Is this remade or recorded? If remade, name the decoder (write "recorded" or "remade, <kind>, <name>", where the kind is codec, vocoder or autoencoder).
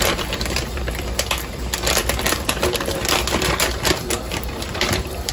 remade, vocoder, BigVGAN v2